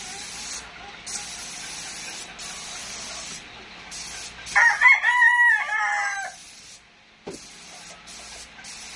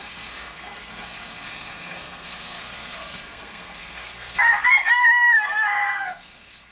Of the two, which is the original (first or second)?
first